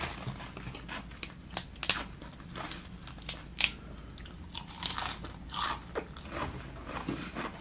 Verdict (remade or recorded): recorded